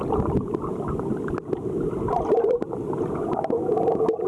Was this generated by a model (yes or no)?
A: no